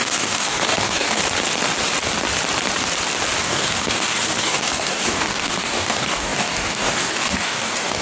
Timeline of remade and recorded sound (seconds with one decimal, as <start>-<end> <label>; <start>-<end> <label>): 0.0-1.2 remade; 1.2-3.4 recorded; 3.4-8.0 remade